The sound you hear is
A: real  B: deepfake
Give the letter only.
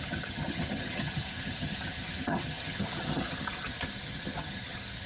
B